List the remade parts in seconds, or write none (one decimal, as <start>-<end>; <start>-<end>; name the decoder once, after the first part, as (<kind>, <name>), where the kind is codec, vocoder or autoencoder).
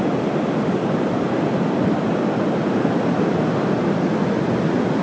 none